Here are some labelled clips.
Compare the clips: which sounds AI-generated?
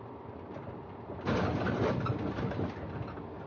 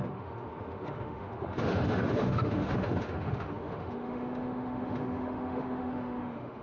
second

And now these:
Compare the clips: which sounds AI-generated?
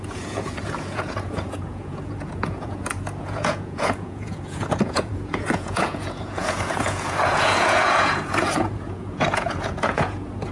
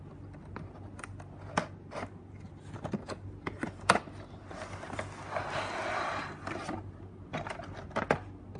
first